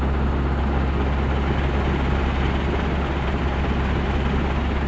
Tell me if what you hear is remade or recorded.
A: recorded